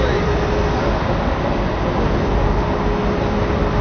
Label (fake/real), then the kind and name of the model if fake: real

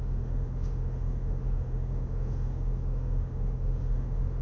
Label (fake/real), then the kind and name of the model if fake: fake, autoencoder, DAC-VAE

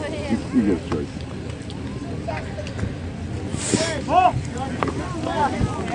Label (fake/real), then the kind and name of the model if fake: real